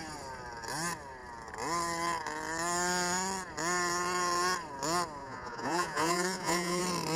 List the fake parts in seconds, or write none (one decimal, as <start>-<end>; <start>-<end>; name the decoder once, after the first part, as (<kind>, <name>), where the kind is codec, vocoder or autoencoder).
5.2-6.8 (vocoder, Vocos)